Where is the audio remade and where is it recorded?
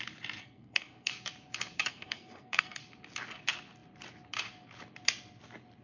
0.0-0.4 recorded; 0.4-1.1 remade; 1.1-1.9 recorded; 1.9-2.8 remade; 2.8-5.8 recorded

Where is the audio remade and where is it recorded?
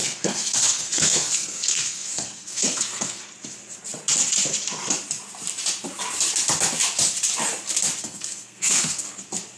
0.0-3.2 remade; 3.2-8.0 recorded; 8.0-9.2 remade; 9.2-9.6 recorded